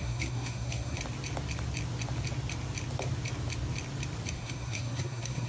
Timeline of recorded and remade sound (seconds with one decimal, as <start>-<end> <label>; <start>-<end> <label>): 0.0-1.0 remade; 1.0-4.3 recorded; 4.3-5.5 remade